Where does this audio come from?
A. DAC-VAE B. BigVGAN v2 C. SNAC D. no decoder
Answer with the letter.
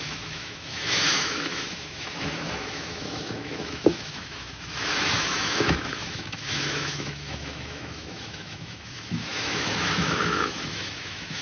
A